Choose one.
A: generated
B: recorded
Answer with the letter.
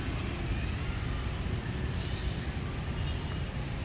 B